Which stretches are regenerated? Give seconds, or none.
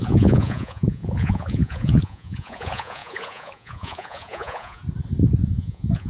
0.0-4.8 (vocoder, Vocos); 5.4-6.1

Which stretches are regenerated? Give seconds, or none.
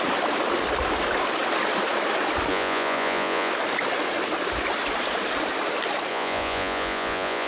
2.5-3.5 (vocoder, Vocos); 6.1-7.5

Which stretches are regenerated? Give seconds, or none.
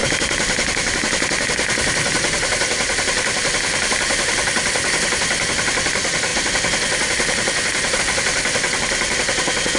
none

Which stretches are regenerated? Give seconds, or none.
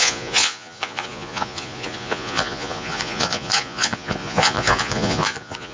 0.0-5.7 (vocoder, Vocos)